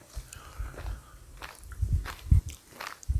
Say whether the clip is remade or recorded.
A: recorded